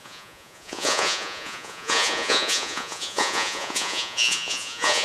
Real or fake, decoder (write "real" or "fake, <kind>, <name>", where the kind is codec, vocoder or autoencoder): fake, vocoder, Vocos